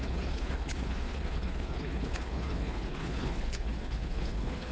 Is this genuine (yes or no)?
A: no